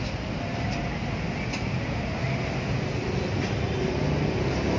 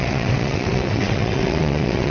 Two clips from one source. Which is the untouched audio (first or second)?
first